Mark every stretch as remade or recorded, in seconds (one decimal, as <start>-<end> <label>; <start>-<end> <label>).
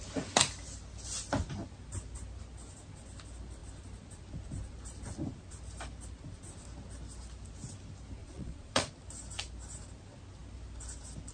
0.0-8.2 recorded; 8.2-8.9 remade; 8.9-11.3 recorded